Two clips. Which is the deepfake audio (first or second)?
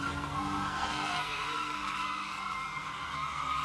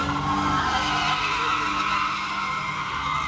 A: first